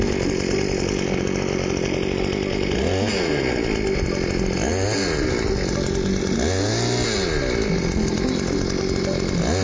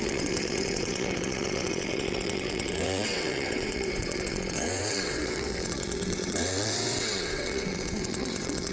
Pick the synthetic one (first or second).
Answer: second